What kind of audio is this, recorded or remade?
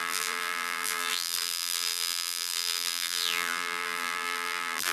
remade